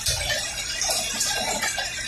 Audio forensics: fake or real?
real